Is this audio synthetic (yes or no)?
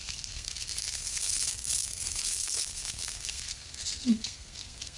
yes